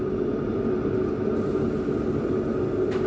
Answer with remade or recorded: recorded